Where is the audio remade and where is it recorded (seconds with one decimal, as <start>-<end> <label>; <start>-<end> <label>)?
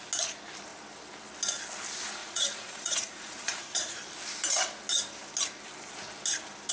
0.0-2.2 recorded; 2.2-4.0 remade; 4.0-6.7 recorded